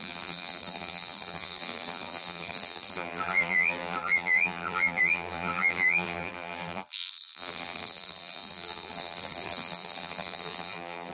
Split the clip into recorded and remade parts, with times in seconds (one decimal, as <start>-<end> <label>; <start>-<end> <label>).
0.0-11.1 remade